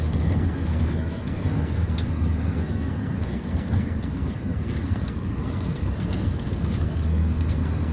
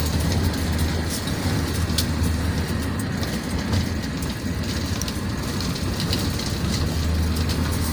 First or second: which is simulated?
first